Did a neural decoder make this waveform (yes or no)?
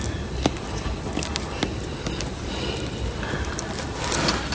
no